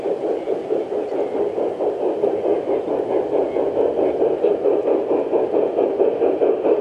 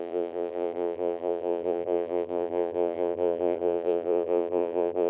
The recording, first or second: first